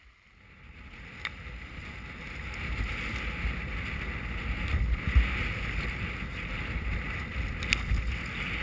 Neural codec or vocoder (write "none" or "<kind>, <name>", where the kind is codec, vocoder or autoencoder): none